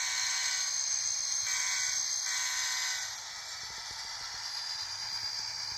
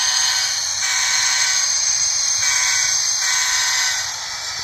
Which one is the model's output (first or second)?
second